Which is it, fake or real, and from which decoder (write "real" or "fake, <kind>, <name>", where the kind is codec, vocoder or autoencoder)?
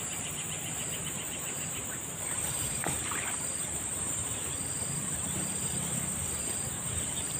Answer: fake, vocoder, BigVGAN v2